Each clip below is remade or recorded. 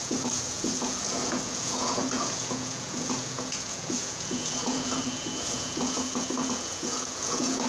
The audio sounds remade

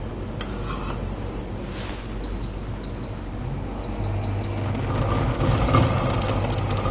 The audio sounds recorded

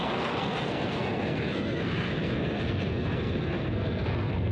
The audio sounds remade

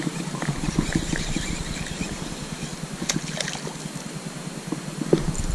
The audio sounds recorded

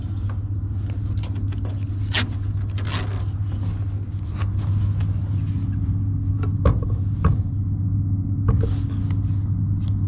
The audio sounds recorded